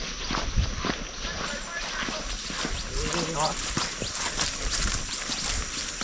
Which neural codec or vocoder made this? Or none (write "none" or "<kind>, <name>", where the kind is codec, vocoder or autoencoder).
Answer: none